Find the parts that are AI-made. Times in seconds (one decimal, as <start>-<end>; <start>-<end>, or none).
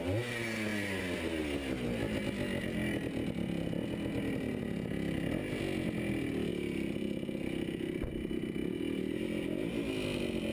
none